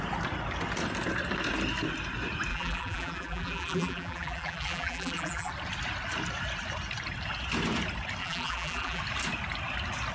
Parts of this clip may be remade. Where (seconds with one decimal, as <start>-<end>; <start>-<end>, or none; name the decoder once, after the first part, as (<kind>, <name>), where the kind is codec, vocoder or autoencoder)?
2.5-5.5 (vocoder, BigVGAN v2); 8.2-9.0